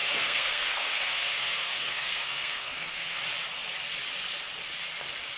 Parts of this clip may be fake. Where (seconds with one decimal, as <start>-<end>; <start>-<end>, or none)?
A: 0.0-3.2